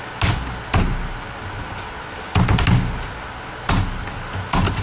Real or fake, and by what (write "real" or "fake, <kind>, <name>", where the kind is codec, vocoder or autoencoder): real